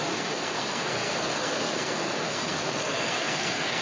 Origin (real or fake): fake